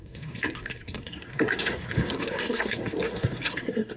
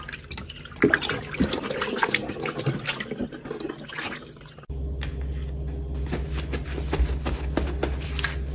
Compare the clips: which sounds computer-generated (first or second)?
first